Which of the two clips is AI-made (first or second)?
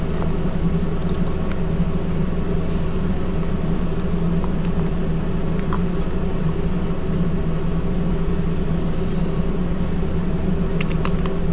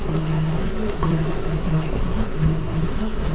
second